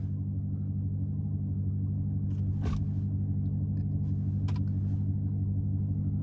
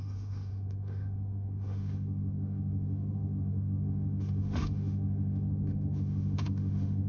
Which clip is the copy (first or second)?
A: second